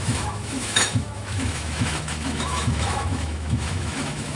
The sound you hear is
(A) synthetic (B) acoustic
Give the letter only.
A